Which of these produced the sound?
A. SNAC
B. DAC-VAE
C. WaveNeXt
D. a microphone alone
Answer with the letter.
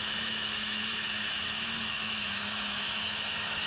B